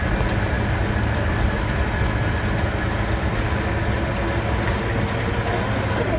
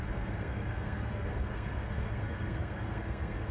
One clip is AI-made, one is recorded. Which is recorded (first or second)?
first